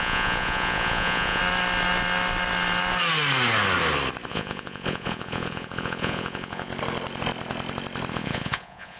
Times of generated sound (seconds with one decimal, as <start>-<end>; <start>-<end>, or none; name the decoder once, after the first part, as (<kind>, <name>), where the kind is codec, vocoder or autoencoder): 0.0-1.4 (vocoder, Vocos); 4.3-6.7; 8.1-9.0